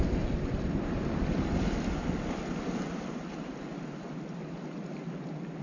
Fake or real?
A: real